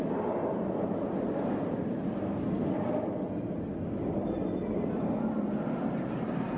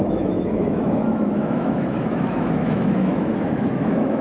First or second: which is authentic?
first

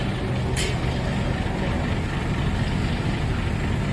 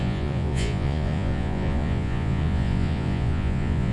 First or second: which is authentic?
first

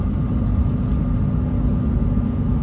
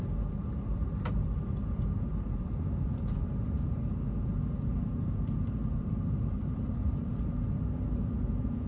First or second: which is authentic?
first